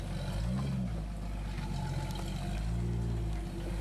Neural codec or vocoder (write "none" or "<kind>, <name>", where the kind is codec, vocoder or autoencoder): none